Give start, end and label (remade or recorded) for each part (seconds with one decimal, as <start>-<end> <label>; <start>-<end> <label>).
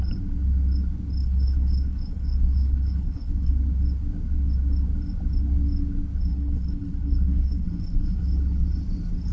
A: 0.0-1.2 recorded; 1.2-3.5 remade; 3.5-6.3 recorded; 6.3-8.2 remade; 8.2-9.3 recorded